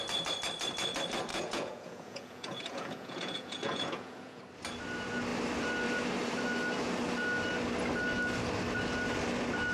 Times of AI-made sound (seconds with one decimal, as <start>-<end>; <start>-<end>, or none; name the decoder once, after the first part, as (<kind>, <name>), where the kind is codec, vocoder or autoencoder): 1.3-4.4 (vocoder, Vocos)